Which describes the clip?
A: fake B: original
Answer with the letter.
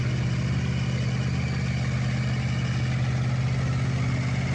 B